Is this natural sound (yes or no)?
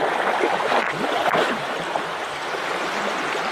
yes